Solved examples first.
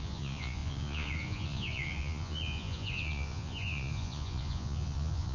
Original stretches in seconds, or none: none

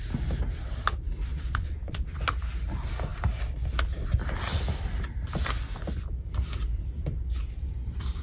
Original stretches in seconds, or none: 0.0-1.3; 2.2-8.2

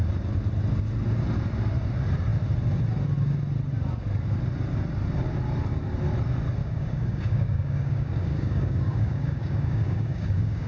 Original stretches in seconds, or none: 0.0-6.6